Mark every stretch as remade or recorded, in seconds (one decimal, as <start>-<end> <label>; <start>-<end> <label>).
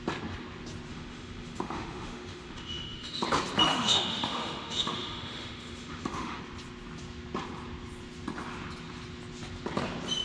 0.0-0.9 recorded; 0.9-3.2 remade; 3.2-3.7 recorded; 3.7-6.4 remade; 6.4-10.2 recorded